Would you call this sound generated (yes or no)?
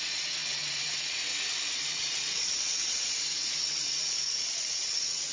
yes